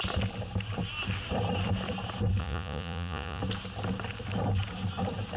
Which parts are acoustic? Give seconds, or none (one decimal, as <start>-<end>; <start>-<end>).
0.0-2.4; 3.4-5.4